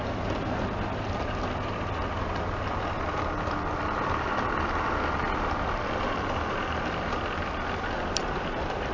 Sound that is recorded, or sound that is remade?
recorded